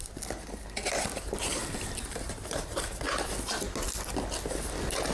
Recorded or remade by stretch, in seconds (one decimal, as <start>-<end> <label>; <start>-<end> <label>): 0.0-1.6 recorded; 1.6-3.0 remade; 3.0-5.1 recorded